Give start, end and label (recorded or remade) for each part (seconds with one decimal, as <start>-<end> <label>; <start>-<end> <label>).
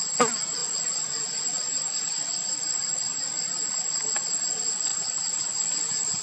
0.0-6.2 recorded